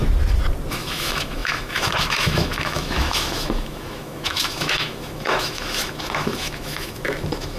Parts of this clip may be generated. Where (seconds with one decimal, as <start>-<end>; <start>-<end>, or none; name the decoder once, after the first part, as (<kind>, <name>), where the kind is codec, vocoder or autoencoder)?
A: 0.7-7.6 (autoencoder, DAC-VAE)